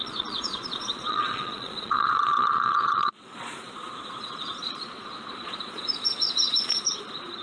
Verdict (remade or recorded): remade